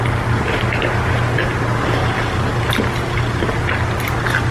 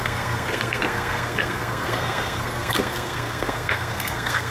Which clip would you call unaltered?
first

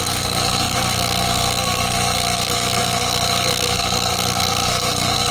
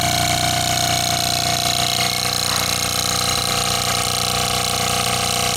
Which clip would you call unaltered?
second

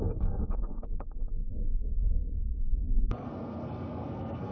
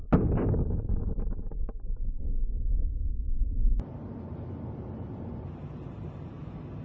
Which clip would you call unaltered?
second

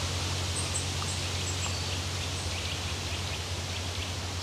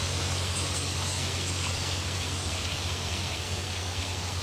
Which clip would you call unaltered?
first